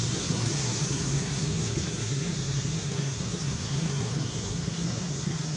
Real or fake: fake